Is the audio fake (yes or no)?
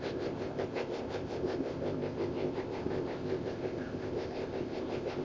yes